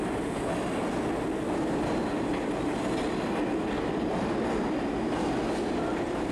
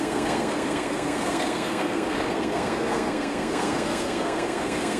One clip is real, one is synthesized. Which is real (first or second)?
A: first